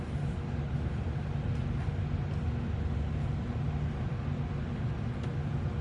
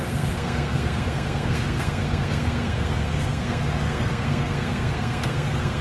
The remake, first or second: second